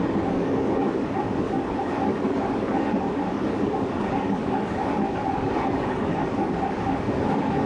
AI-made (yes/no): yes